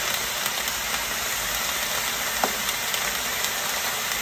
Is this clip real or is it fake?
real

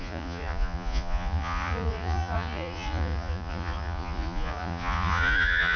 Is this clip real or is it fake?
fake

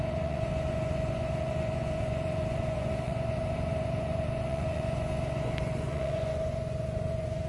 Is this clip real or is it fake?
fake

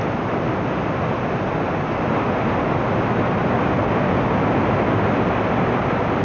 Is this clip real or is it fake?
real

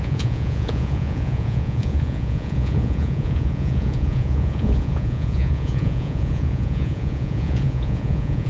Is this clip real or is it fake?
fake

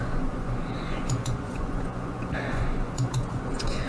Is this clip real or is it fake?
fake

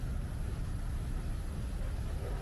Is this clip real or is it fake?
real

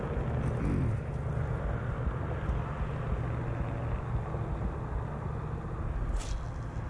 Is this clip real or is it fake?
real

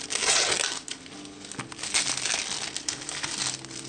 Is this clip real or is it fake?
real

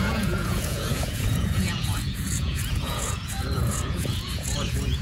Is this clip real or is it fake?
fake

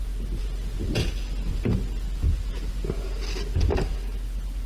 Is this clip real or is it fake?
real